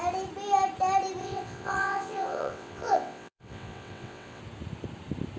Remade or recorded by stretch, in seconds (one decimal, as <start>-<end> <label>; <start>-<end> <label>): 0.0-1.2 recorded; 1.2-4.4 remade; 4.4-5.4 recorded